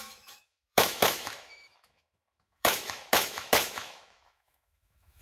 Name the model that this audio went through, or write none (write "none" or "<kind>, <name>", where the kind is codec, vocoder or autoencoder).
autoencoder, DAC-VAE